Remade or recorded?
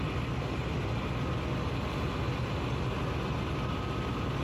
recorded